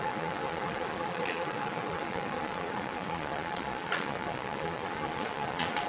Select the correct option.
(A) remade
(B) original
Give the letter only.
A